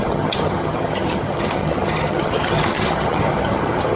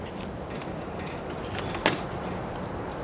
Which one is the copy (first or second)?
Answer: first